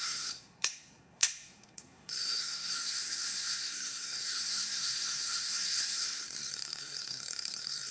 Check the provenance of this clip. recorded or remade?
remade